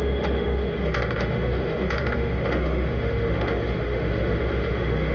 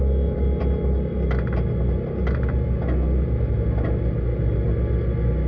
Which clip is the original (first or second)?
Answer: second